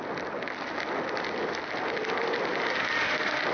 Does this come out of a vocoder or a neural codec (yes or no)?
no